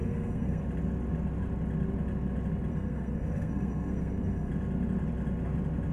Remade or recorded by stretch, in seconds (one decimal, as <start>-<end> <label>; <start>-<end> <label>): 0.0-0.6 remade; 0.6-2.7 recorded; 2.7-4.5 remade; 4.5-5.9 recorded